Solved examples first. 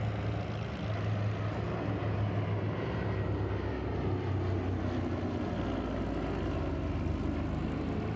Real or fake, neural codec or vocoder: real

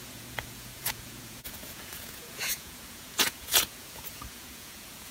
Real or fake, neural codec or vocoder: fake, vocoder, Vocos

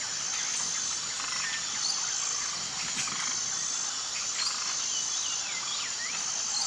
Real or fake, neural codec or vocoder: real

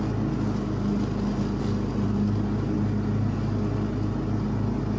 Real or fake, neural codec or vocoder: real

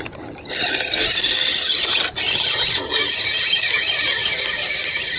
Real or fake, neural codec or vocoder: real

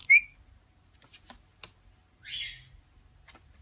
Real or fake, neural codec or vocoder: real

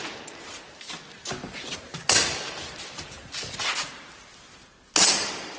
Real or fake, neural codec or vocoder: real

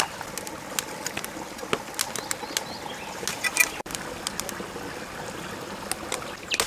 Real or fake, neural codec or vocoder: real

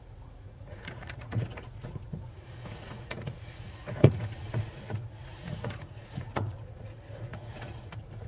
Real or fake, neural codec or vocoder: fake, vocoder, Vocos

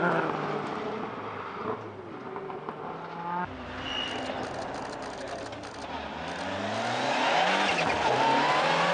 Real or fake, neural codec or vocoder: real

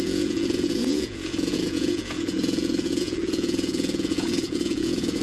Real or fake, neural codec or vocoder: fake, vocoder, Vocos